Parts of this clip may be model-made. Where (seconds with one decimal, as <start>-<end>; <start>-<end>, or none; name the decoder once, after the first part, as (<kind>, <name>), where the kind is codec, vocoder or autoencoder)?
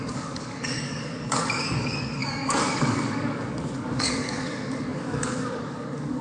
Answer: 0.0-6.2 (codec, DAC)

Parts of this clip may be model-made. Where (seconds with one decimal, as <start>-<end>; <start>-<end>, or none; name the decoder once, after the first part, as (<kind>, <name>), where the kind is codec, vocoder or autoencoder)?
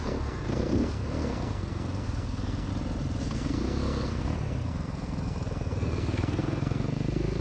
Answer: 0.0-2.7 (codec, SNAC); 3.2-7.4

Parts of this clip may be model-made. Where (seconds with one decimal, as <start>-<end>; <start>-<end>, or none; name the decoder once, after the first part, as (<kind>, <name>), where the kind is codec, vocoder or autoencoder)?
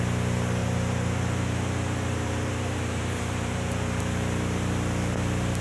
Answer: 0.6-4.0 (vocoder, BigVGAN v2)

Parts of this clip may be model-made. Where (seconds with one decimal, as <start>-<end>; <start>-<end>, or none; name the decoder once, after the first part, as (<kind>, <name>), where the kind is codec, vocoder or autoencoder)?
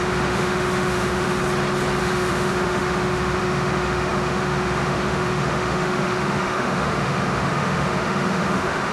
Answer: 0.0-1.4 (autoencoder, DAC-VAE); 2.0-8.9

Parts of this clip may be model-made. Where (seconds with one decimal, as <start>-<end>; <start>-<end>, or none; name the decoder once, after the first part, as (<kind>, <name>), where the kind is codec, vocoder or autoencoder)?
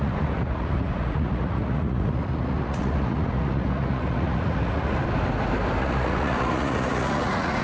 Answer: 0.0-5.0 (vocoder, Vocos); 5.8-7.6